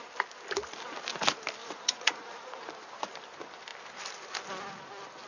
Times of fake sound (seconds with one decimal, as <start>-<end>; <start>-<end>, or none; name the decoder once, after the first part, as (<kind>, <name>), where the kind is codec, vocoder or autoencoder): 1.6-2.6 (vocoder, Vocos)